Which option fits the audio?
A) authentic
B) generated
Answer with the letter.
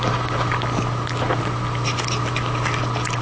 A